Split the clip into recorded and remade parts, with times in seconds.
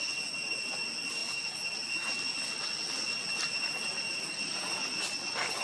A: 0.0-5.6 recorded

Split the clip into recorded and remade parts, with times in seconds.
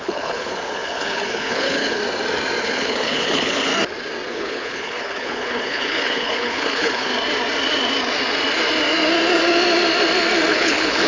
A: 0.0-2.0 remade; 2.0-2.6 recorded; 2.6-3.7 remade; 3.7-4.3 recorded; 4.3-7.1 remade; 7.1-10.5 recorded; 10.5-11.1 remade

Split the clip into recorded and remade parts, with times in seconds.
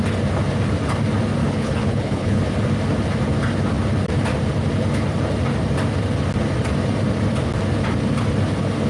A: 0.0-1.4 recorded; 1.4-2.4 remade; 2.4-8.9 recorded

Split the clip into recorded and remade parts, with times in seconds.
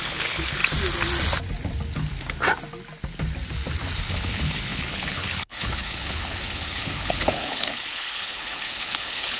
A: 0.0-0.6 remade; 0.6-4.1 recorded; 4.1-9.4 remade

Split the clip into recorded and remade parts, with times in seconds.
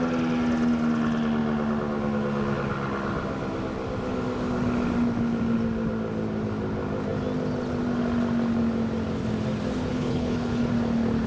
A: 0.0-9.9 recorded; 9.9-10.7 remade; 10.7-11.3 recorded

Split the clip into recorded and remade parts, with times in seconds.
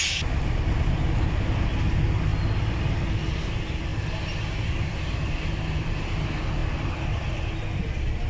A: 0.0-8.3 recorded